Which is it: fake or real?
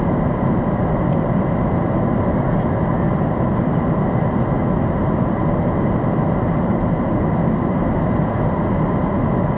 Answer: real